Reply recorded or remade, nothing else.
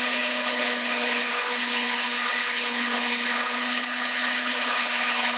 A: remade